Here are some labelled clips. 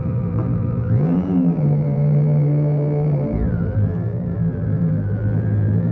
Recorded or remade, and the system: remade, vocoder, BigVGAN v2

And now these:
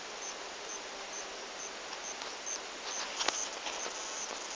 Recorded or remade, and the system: recorded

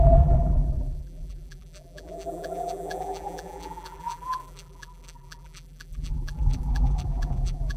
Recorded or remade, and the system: remade, vocoder, BigVGAN v2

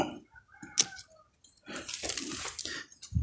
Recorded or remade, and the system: recorded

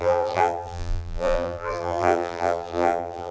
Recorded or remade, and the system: remade, vocoder, BigVGAN v2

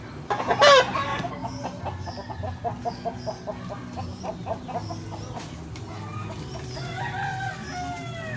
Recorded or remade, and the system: recorded